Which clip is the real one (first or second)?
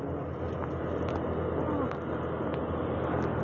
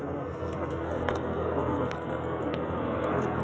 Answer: first